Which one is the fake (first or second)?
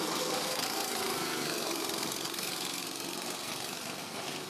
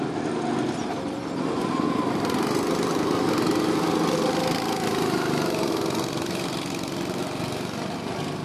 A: first